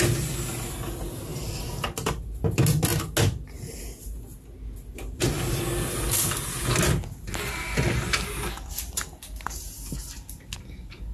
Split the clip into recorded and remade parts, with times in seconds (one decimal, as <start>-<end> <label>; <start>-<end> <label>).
0.0-1.3 recorded; 1.3-2.2 remade; 2.2-11.1 recorded